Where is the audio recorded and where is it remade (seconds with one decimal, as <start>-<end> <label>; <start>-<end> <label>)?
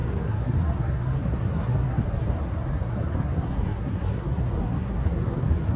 0.0-5.8 remade